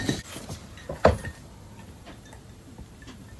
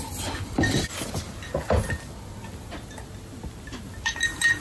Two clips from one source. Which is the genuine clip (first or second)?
second